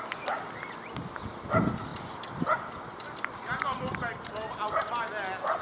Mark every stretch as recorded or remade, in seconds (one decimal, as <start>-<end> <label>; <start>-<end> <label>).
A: 0.0-5.6 recorded